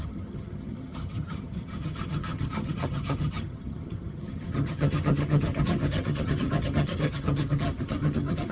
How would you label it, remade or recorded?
remade